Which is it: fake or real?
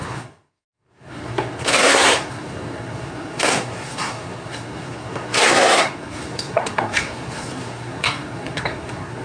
fake